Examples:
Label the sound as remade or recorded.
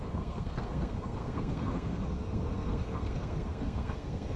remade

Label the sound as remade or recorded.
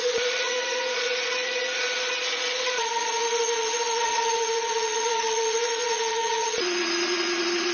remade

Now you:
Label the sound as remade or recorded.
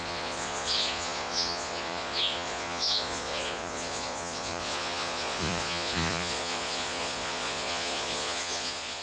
remade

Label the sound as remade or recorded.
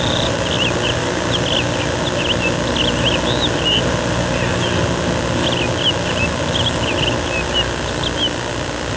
recorded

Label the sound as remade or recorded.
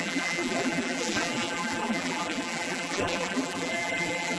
remade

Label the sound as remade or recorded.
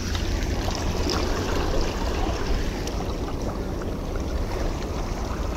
recorded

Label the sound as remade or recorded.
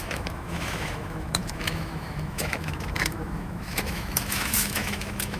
remade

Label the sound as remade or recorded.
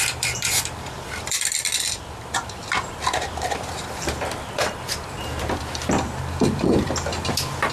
remade